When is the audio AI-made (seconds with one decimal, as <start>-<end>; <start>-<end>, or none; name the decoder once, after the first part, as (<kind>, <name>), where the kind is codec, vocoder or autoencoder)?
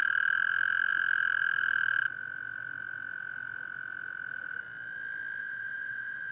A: 5.4-6.3 (vocoder, WaveNeXt)